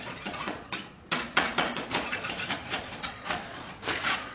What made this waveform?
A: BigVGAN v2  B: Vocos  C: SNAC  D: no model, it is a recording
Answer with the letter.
B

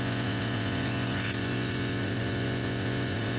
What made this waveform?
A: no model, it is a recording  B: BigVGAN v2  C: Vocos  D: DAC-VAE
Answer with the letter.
C